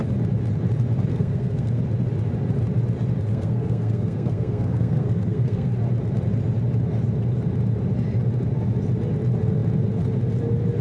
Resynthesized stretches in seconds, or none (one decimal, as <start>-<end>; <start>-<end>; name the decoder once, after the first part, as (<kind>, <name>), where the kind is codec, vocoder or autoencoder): 1.1-1.8 (codec, SNAC); 3.3-5.7